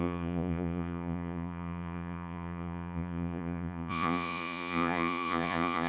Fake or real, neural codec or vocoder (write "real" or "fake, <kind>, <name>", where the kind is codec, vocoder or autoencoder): fake, vocoder, Vocos